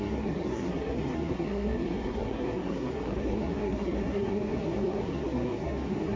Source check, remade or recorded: remade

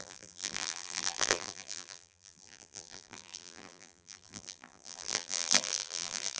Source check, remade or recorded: remade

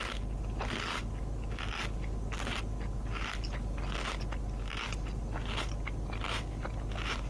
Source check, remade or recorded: recorded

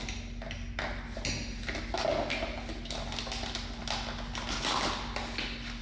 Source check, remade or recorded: recorded